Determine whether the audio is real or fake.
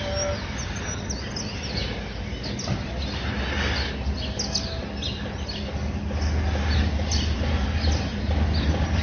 real